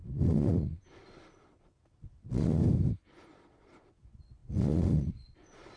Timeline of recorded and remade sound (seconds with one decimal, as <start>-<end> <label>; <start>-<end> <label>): 0.0-2.6 remade; 2.6-3.3 recorded; 3.3-5.8 remade